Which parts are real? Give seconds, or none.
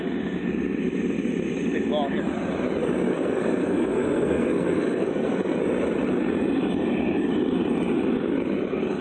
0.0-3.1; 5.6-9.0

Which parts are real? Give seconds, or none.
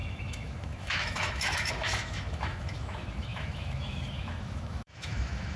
none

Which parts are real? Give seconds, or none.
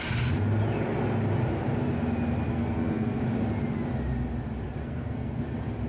0.0-2.5; 3.2-4.8; 5.4-5.9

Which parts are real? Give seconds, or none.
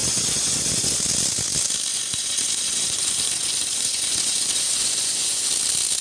1.0-1.9; 5.5-6.0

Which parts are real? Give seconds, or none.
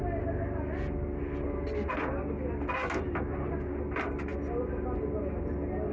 0.0-5.9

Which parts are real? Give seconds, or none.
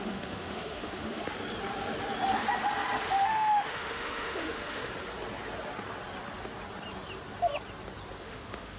1.2-3.3; 4.9-8.2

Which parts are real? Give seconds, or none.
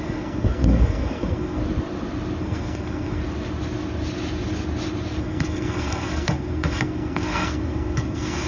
1.6-2.4; 3.2-5.2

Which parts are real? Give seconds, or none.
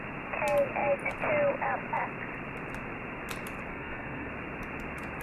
0.0-3.7; 4.3-5.2